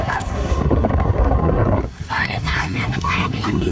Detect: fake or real fake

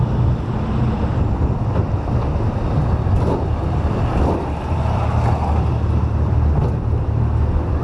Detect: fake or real real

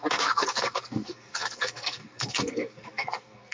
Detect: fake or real fake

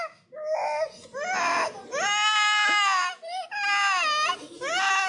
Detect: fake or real real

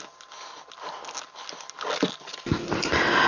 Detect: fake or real real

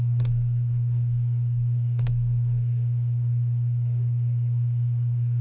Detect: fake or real fake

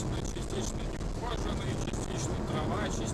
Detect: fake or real real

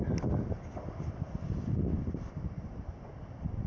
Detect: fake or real real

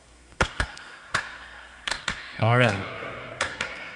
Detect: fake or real fake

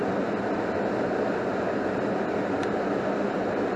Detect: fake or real real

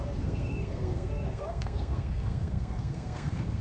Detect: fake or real fake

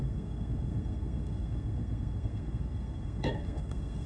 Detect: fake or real fake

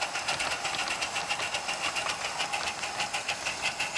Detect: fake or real real